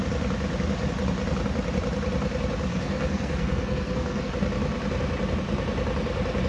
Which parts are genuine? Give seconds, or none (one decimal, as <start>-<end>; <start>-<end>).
0.0-2.7; 4.3-6.5

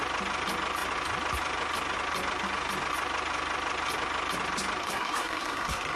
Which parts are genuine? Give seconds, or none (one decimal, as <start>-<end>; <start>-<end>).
0.0-4.8

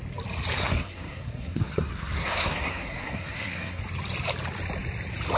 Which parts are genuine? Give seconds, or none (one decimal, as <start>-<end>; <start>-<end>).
0.0-0.6; 3.8-5.4

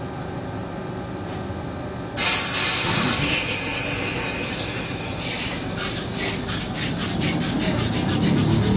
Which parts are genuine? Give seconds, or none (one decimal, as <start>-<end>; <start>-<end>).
0.0-8.8